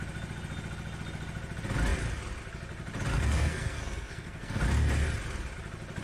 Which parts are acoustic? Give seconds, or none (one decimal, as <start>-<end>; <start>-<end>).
0.0-3.1; 4.6-6.0